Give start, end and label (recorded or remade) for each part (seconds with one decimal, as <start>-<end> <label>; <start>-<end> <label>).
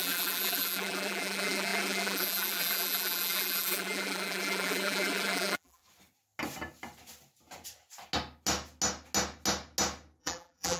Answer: 0.0-5.8 remade; 5.8-10.2 recorded; 10.2-10.8 remade